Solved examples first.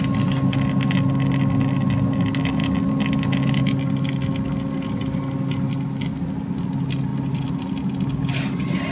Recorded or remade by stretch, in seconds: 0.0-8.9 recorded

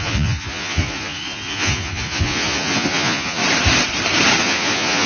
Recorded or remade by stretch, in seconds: 0.0-3.4 remade; 3.4-4.4 recorded; 4.4-5.1 remade